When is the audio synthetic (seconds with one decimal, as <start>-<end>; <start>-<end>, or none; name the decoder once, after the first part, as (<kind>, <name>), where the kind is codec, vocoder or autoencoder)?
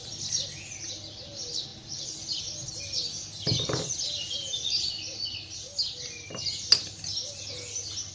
none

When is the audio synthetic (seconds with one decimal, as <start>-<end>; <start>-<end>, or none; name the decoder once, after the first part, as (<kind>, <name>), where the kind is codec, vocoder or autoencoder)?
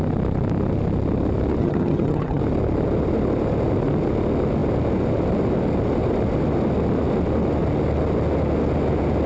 1.6-2.4 (vocoder, HiFi-GAN)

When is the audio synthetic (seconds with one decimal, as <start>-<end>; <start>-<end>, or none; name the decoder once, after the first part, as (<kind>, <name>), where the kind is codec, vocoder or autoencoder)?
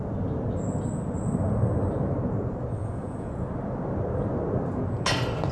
2.8-3.3 (vocoder, Vocos)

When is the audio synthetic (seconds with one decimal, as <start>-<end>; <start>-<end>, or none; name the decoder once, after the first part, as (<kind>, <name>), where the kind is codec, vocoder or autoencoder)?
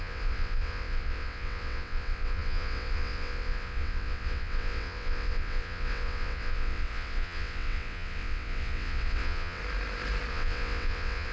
0.0-9.6 (vocoder, WaveNeXt); 10.3-11.3